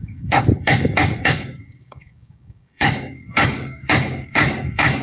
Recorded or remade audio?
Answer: remade